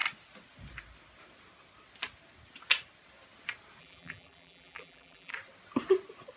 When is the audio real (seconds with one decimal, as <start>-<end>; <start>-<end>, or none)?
0.0-3.8; 5.3-6.4